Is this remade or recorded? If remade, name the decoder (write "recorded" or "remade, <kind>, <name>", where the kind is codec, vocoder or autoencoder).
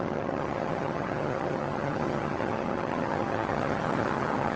remade, vocoder, HiFi-GAN